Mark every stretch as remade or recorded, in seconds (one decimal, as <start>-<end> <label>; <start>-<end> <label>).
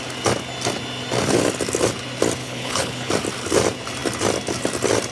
0.0-2.4 recorded; 2.4-3.1 remade; 3.1-5.1 recorded